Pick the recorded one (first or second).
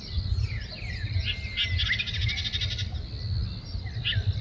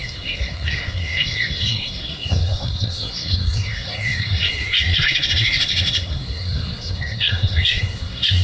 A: first